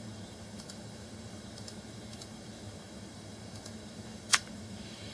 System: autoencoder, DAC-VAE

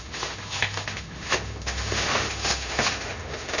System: autoencoder, DAC-VAE